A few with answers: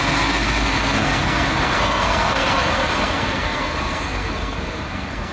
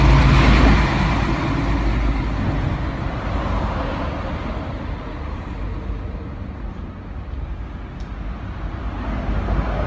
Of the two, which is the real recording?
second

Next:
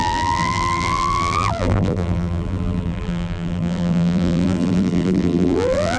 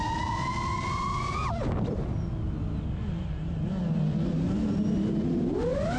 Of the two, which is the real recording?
second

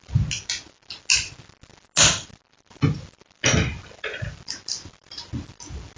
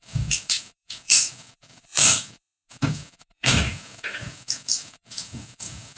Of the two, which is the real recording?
first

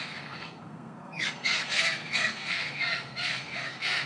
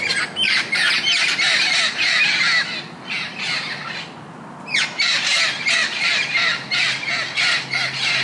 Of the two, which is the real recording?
second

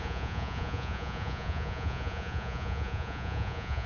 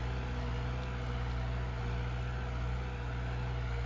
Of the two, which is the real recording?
second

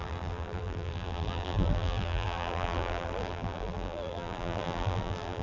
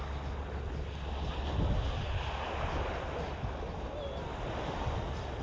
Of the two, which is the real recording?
second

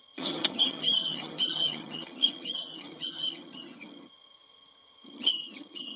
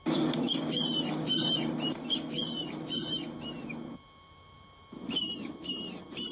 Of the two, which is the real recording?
second